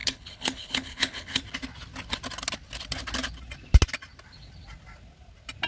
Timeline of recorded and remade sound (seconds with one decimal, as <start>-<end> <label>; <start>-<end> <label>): 0.0-1.4 remade; 1.4-5.7 recorded